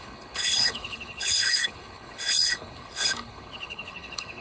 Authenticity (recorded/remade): remade